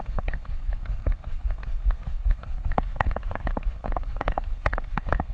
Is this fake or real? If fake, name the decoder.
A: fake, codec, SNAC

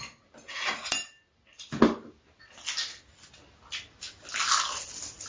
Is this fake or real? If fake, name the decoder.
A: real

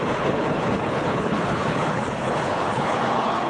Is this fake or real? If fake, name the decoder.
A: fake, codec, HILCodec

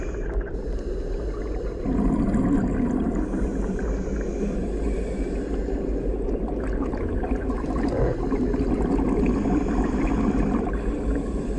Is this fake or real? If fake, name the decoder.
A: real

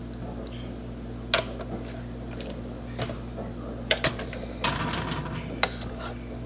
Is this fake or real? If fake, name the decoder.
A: real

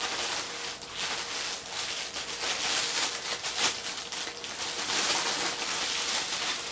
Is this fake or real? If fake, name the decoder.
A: real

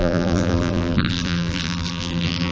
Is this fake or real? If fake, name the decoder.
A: fake, vocoder, BigVGAN v2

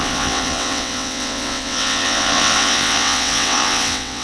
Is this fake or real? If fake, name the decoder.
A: fake, vocoder, WaveNeXt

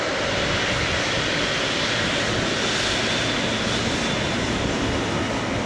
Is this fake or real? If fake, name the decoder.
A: real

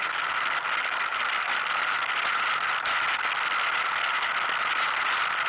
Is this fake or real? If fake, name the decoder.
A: real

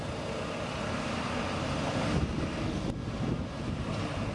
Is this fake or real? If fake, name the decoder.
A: real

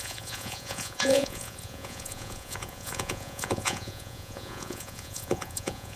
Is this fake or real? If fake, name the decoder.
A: fake, vocoder, Vocos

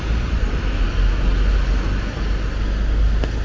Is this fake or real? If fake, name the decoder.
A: real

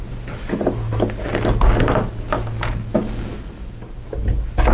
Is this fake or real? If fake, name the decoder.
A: real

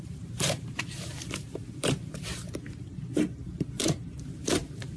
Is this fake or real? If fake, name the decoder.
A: fake, vocoder, BigVGAN v2